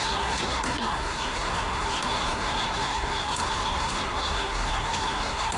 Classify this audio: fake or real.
fake